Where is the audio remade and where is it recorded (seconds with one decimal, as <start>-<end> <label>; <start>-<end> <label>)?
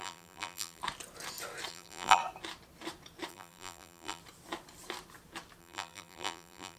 0.0-0.8 remade; 0.8-1.7 recorded; 1.7-2.2 remade; 2.2-3.3 recorded; 3.3-4.2 remade; 4.2-5.6 recorded; 5.6-6.8 remade